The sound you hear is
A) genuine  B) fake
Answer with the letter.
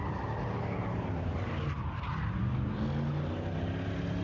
A